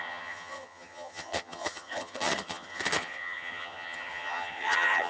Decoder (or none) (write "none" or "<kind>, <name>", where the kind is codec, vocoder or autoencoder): vocoder, HiFi-GAN